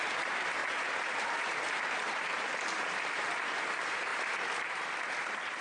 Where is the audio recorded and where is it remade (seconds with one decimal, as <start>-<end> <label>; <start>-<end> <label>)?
0.0-5.6 recorded